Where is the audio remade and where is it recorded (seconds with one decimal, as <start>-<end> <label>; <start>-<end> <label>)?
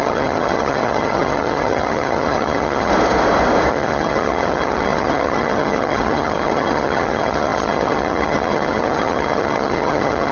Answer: 0.0-2.9 remade; 2.9-3.7 recorded; 3.7-10.3 remade